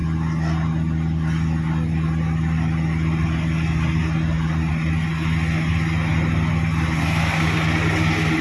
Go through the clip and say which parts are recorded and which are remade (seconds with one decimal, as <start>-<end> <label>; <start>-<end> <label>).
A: 0.0-8.4 recorded